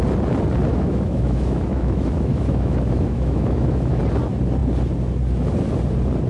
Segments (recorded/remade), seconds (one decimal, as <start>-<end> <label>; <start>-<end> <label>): 0.0-0.7 recorded; 0.7-4.0 remade; 4.0-6.3 recorded